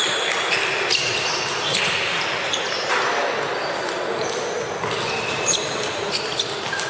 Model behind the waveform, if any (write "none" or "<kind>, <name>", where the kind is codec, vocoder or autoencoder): none